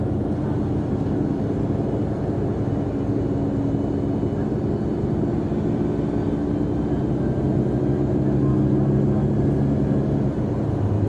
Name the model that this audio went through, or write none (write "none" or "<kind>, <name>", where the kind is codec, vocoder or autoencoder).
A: none